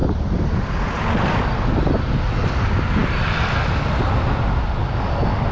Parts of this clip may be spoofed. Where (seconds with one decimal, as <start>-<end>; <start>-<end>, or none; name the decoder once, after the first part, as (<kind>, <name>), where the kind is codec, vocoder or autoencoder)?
0.0-1.4 (vocoder, BigVGAN v2)